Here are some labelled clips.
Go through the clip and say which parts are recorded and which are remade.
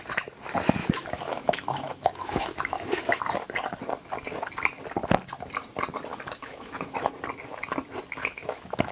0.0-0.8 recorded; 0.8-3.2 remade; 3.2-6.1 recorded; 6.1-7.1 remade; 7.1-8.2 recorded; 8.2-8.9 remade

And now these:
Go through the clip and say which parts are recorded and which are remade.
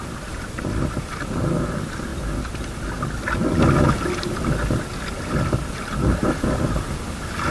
0.0-7.5 recorded